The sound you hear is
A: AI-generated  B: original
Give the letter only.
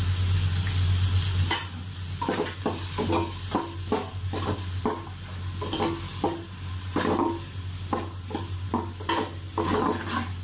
B